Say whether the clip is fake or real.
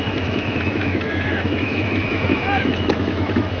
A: fake